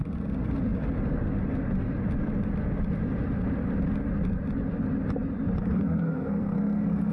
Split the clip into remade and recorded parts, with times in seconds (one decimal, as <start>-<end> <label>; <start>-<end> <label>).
0.0-5.6 recorded; 5.6-7.1 remade